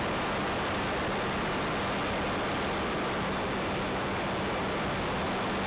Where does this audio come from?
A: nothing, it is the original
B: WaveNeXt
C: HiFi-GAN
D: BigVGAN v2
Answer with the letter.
A